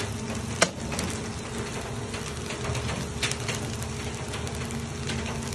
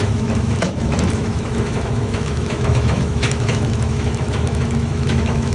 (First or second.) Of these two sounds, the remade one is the second